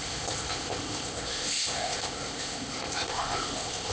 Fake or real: fake